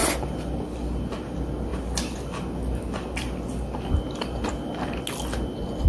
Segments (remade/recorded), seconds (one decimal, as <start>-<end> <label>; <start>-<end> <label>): 0.0-5.9 recorded